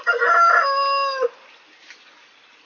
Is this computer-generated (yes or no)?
no